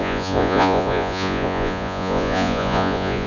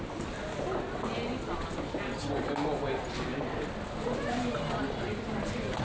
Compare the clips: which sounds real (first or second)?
second